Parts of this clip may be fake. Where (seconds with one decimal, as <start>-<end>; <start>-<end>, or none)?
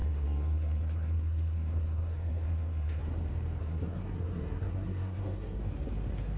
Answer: 0.0-3.0; 3.6-5.6